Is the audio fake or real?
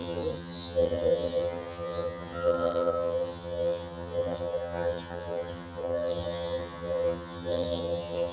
fake